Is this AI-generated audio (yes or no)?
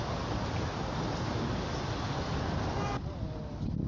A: no